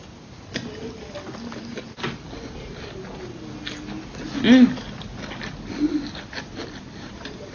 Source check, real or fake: real